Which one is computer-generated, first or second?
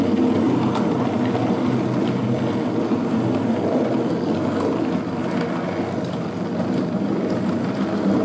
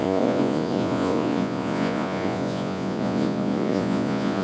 second